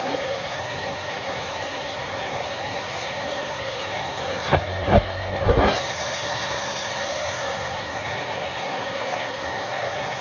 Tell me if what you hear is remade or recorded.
remade